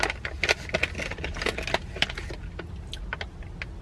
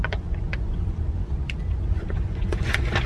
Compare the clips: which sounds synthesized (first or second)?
second